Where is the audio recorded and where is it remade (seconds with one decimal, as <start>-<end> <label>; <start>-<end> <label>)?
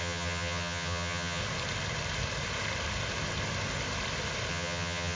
0.0-1.4 remade; 1.4-4.5 recorded; 4.5-5.1 remade